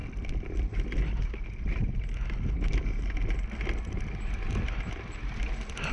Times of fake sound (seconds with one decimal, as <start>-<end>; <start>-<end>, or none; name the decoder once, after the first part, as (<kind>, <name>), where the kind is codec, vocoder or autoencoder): 0.0-0.7 (vocoder, BigVGAN v2)